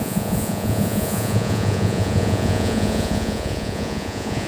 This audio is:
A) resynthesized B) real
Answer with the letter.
A